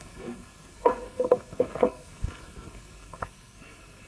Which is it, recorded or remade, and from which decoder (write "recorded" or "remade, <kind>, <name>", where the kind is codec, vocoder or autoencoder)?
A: remade, codec, SNAC